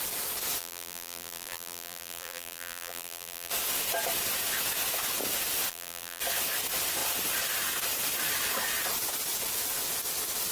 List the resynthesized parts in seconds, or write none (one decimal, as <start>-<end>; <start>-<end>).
0.6-3.5; 5.7-6.2